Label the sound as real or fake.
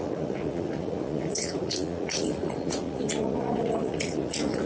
fake